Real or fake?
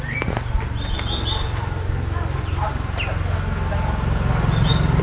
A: real